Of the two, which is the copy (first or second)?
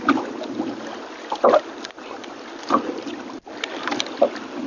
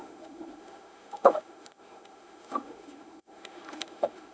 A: second